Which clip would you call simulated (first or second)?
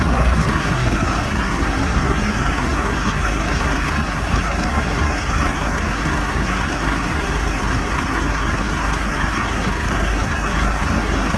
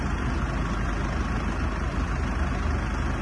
first